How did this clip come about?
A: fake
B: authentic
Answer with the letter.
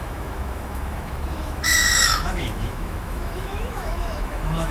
A